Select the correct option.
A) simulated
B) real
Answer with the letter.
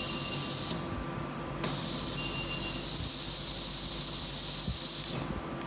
B